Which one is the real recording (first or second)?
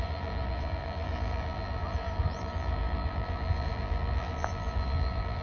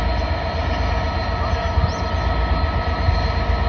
second